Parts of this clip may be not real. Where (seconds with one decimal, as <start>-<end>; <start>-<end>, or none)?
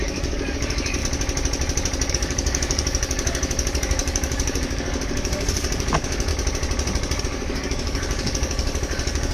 0.0-1.0; 2.1-6.3; 7.2-9.3